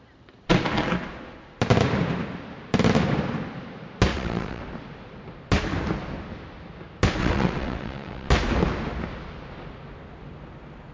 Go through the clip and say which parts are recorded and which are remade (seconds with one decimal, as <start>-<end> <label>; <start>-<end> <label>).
0.0-4.1 recorded; 4.1-4.6 remade; 4.6-7.2 recorded; 7.2-8.3 remade; 8.3-10.9 recorded